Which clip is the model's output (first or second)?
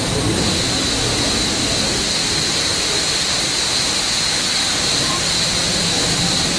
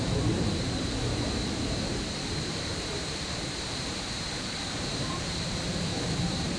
second